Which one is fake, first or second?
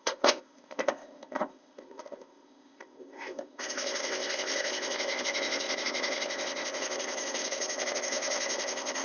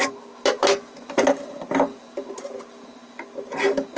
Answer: first